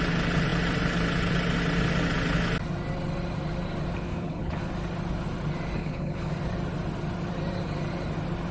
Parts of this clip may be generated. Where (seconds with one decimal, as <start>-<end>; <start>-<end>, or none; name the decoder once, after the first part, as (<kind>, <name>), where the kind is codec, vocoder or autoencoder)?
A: 4.1-4.7 (codec, HILCodec); 5.8-6.3